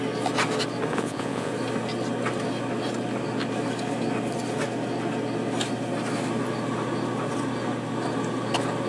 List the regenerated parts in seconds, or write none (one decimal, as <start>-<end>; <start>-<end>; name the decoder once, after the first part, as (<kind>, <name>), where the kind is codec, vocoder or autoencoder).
0.9-1.5 (vocoder, Vocos)